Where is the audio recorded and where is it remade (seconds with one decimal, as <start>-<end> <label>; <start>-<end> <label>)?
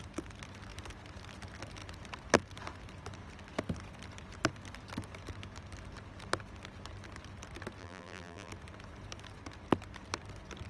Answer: 0.0-7.8 recorded; 7.8-8.5 remade; 8.5-10.7 recorded